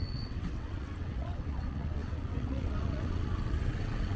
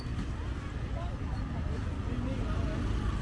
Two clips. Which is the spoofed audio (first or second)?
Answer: first